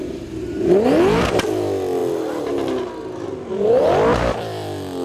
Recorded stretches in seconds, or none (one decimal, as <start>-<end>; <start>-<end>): 0.0-5.0